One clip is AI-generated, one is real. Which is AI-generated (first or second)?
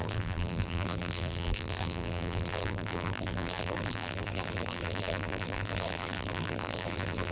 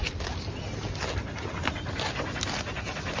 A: first